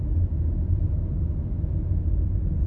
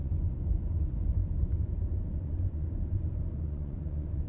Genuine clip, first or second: first